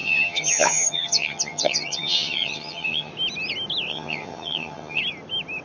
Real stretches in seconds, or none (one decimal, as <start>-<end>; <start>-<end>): 3.1-3.9; 5.0-5.6

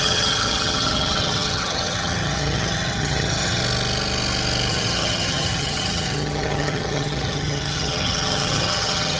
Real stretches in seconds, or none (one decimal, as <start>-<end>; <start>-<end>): 3.6-4.7